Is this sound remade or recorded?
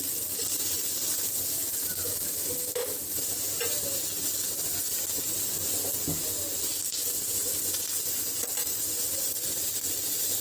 recorded